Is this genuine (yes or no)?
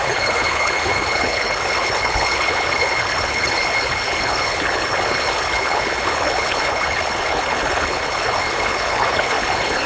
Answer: no